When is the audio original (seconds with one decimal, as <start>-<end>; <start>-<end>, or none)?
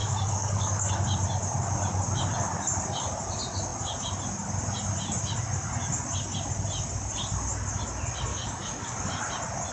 0.9-8.3; 9.2-9.7